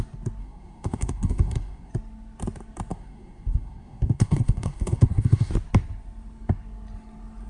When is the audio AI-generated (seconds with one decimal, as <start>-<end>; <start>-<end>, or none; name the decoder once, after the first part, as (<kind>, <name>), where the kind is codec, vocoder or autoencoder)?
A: 0.4-1.9 (codec, SNAC); 2.9-5.5

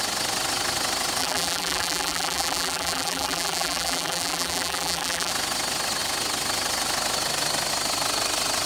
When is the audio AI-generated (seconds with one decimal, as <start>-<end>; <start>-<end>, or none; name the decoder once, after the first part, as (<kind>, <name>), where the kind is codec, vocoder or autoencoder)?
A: 1.2-5.3 (vocoder, BigVGAN v2)

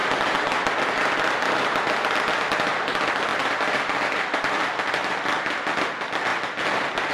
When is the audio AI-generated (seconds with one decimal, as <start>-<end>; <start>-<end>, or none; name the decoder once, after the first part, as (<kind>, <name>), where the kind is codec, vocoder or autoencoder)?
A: 3.3-4.5 (vocoder, BigVGAN v2)

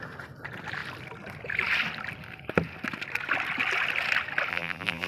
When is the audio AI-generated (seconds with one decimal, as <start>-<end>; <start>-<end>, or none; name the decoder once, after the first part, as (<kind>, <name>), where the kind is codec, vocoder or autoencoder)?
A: 4.5-5.1 (vocoder, BigVGAN v2)

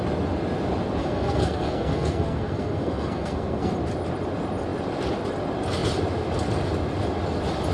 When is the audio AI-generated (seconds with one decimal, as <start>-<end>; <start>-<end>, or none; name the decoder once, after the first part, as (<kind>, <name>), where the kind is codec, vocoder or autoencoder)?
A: 1.0-3.7 (codec, SNAC)